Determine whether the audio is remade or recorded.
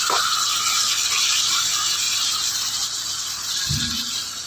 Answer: recorded